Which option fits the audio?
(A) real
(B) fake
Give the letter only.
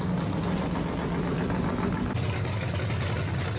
A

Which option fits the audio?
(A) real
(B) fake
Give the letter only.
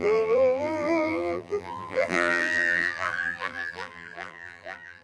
B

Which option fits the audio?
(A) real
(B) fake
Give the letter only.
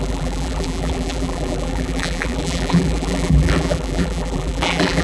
B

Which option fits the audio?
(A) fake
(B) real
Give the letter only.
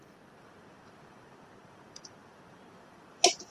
A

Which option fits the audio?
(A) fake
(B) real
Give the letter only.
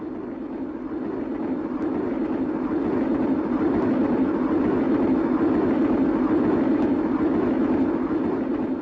A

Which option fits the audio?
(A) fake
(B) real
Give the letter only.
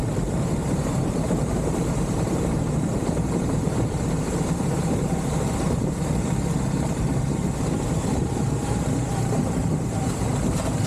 A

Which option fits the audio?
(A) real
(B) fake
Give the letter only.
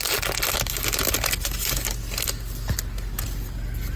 A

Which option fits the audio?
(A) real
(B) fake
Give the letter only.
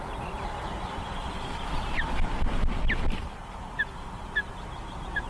B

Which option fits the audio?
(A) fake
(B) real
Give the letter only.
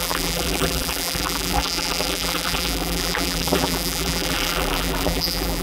A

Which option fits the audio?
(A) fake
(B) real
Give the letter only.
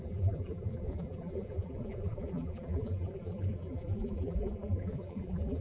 A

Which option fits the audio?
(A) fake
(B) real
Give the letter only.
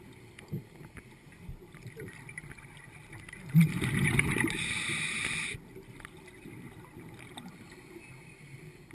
B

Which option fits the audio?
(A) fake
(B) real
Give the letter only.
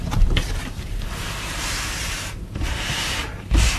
A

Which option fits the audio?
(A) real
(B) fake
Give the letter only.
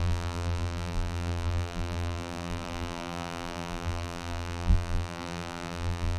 B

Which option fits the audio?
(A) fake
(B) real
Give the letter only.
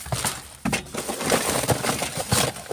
B